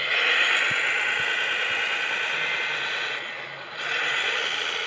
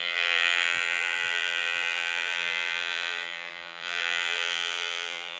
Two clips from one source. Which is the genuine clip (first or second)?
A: first